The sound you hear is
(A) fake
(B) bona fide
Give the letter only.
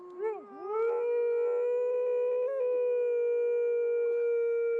B